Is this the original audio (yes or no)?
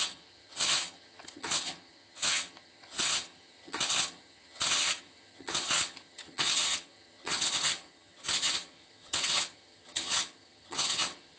no